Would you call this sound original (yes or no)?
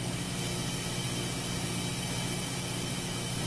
yes